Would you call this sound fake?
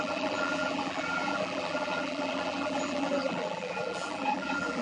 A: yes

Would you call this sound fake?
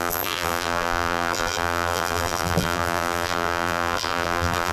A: yes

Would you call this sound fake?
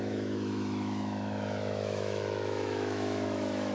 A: yes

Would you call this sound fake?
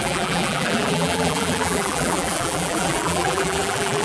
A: yes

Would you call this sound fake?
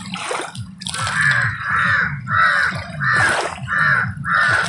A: no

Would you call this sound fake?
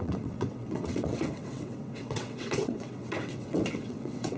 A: yes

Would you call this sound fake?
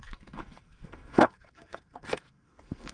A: yes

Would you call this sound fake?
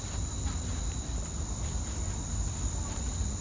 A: no